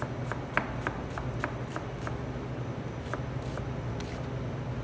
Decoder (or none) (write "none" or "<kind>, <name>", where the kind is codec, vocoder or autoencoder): none